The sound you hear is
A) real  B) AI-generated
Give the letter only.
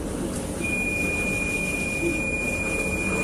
A